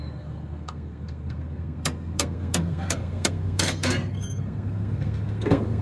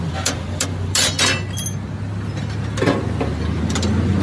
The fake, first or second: first